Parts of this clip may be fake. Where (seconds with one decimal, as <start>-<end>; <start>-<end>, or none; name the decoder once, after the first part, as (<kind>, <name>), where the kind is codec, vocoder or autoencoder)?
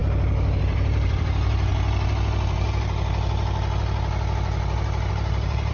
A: 0.6-1.7 (vocoder, BigVGAN v2); 5.1-5.7